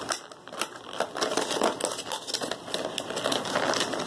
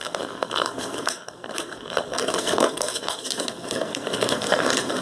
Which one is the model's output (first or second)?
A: second